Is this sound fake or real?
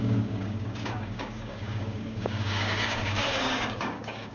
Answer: fake